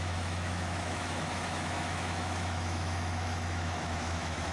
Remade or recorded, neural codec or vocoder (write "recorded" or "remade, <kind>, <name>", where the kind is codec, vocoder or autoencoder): remade, autoencoder, DAC-VAE